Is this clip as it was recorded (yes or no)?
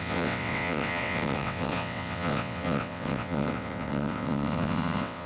no